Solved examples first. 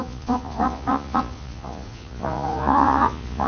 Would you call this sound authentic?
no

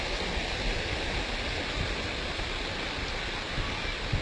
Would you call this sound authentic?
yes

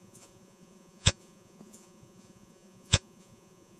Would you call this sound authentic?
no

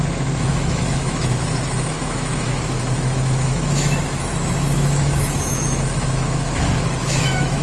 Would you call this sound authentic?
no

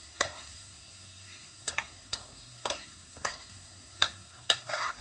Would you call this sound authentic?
no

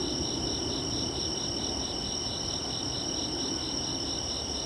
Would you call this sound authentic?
yes